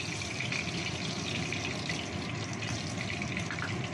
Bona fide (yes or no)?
yes